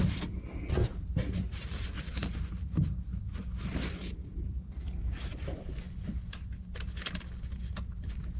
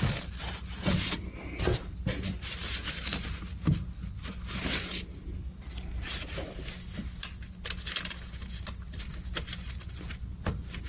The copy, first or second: first